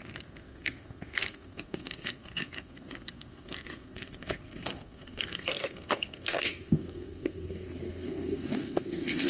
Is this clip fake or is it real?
fake